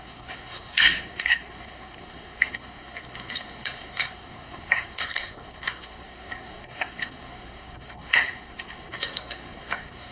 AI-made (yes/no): yes